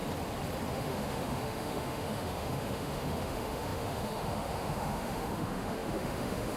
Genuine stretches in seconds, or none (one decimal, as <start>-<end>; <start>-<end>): 0.0-0.7